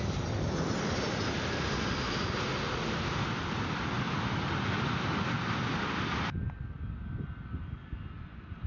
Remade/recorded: recorded